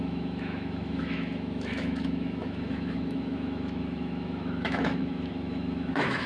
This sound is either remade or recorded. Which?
remade